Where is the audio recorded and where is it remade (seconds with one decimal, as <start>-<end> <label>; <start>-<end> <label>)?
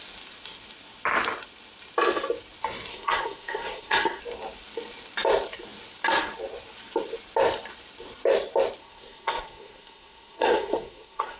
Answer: 0.0-2.9 recorded; 2.9-4.2 remade; 4.2-8.8 recorded; 8.8-11.4 remade